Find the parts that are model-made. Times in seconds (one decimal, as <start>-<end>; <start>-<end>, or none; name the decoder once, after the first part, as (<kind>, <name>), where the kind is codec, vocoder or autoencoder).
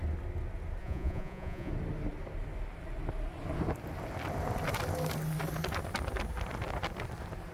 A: 0.8-1.7 (vocoder, Vocos)